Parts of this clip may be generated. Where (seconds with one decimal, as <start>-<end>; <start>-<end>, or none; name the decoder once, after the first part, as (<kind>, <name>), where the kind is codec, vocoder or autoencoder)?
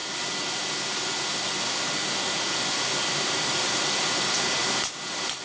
3.1-4.6 (vocoder, BigVGAN v2)